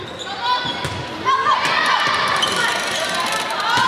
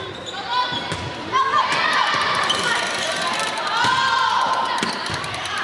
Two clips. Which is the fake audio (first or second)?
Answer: second